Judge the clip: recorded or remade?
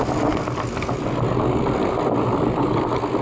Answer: recorded